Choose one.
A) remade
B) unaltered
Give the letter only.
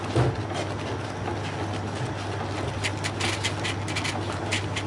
B